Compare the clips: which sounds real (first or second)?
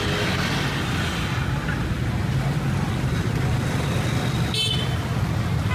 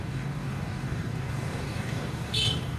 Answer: first